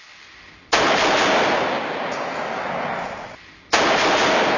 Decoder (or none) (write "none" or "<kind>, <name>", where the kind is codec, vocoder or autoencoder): none